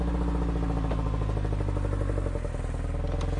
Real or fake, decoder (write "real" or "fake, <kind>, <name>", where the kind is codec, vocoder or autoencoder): real